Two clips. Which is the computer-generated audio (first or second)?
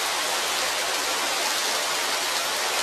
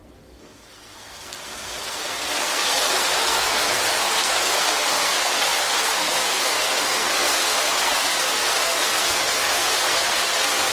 second